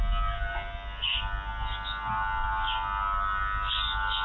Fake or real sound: real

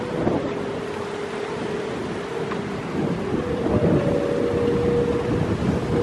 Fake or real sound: real